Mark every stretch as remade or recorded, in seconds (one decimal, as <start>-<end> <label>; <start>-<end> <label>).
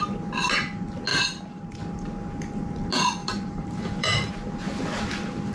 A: 0.0-1.1 recorded; 1.1-1.8 remade; 1.8-3.2 recorded; 3.2-4.3 remade; 4.3-5.5 recorded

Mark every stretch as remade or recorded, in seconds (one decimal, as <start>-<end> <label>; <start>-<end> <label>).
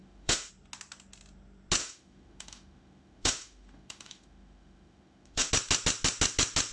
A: 0.0-0.5 remade; 0.5-1.8 recorded; 1.8-5.5 remade; 5.5-6.7 recorded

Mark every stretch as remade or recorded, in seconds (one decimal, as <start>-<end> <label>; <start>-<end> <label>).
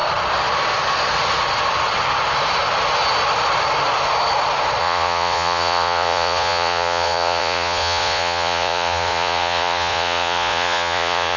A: 0.0-4.8 recorded; 4.8-11.4 remade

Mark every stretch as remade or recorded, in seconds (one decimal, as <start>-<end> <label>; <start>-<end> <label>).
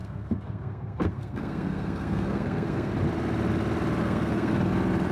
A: 0.0-2.9 remade; 2.9-4.0 recorded; 4.0-4.5 remade; 4.5-5.1 recorded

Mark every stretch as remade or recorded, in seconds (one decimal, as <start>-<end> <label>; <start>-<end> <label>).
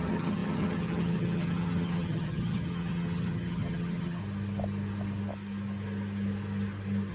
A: 0.0-4.2 remade; 4.2-7.1 recorded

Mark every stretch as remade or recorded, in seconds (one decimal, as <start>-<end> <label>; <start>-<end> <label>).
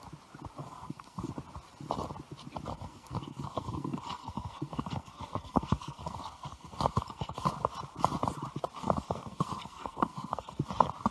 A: 0.0-0.6 recorded; 0.6-1.3 remade; 1.3-2.7 recorded; 2.7-7.5 remade; 7.5-8.8 recorded; 8.8-10.6 remade; 10.6-11.1 recorded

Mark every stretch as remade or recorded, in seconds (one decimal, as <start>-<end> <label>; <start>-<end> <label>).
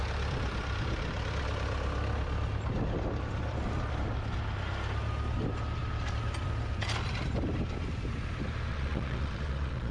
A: 0.0-8.7 recorded; 8.7-9.9 remade